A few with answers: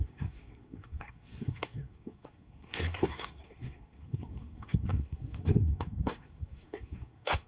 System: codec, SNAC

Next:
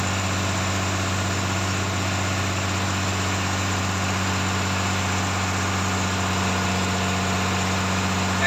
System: none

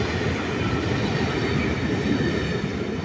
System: none